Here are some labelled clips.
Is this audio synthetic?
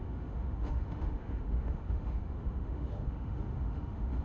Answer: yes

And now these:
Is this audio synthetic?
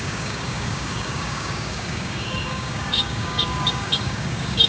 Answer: yes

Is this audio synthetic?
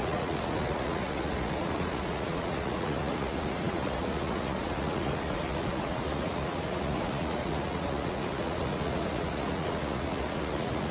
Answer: yes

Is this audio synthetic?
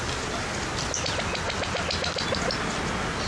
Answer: no